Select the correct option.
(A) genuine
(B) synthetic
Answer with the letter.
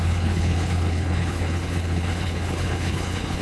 B